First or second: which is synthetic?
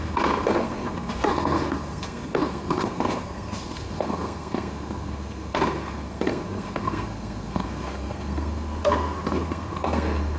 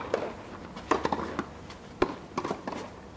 first